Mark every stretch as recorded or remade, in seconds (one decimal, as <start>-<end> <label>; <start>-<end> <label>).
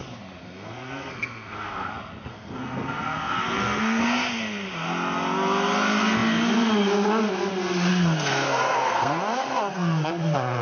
0.0-0.4 recorded; 0.4-1.9 remade; 1.9-2.3 recorded; 2.3-4.0 remade; 4.0-7.9 recorded; 7.9-10.1 remade; 10.1-10.6 recorded